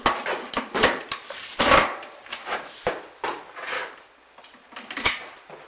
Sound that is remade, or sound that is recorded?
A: recorded